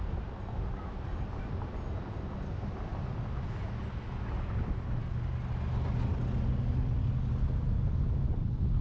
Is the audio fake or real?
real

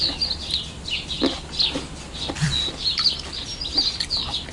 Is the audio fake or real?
real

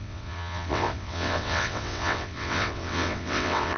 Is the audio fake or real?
fake